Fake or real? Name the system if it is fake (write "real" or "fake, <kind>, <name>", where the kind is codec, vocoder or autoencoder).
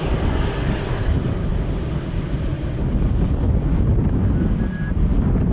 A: real